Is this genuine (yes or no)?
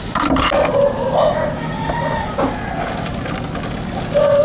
yes